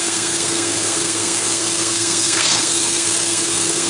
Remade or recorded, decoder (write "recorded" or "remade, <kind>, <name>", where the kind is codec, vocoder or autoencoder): remade, codec, SNAC